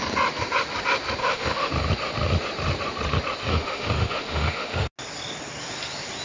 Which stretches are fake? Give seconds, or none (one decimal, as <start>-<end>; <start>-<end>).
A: 1.2-1.7; 3.5-4.9